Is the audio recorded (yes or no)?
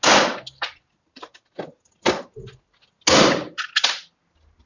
yes